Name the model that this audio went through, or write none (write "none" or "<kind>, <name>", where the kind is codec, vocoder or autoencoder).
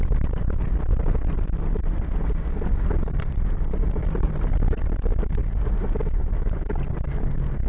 none